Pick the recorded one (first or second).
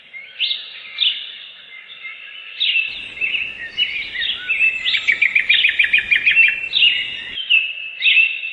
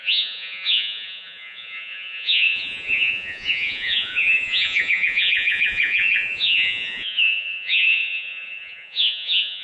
first